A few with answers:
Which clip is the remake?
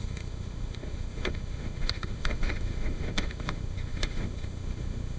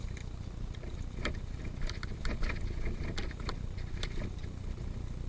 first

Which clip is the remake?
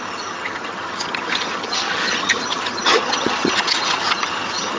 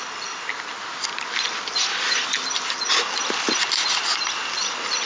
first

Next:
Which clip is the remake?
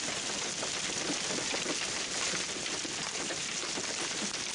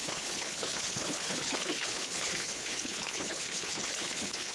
second